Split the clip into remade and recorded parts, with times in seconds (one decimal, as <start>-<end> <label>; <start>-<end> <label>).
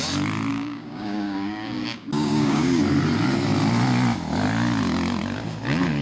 0.0-0.5 recorded; 0.5-2.8 remade; 2.8-6.0 recorded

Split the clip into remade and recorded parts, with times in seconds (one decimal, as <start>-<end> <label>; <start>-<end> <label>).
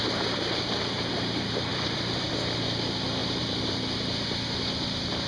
0.0-1.7 recorded; 1.7-2.3 remade; 2.3-3.2 recorded; 3.2-3.8 remade; 3.8-5.3 recorded